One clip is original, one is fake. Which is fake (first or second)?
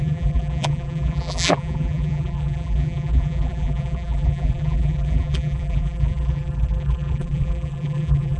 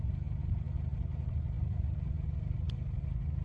first